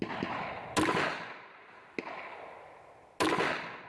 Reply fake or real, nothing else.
real